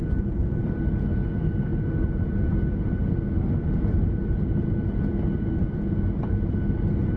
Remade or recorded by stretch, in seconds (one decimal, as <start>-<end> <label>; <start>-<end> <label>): 0.0-7.2 recorded